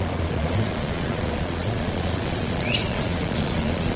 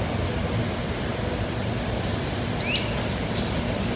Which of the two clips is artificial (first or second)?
first